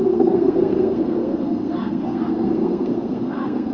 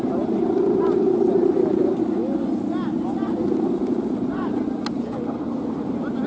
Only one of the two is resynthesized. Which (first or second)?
first